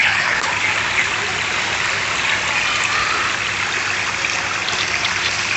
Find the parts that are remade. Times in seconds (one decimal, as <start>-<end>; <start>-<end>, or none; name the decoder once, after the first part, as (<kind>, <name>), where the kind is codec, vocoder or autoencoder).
0.0-0.5 (codec, HILCodec)